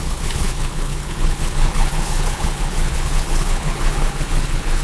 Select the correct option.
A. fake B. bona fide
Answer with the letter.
A